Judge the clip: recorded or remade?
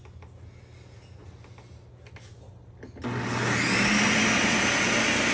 recorded